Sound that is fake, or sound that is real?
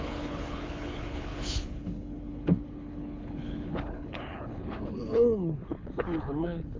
fake